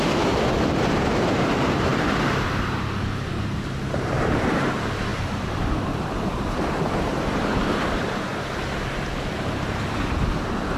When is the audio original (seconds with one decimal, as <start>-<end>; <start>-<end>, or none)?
8.3-9.3